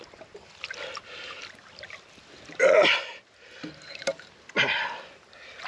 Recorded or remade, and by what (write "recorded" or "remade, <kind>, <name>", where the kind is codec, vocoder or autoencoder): recorded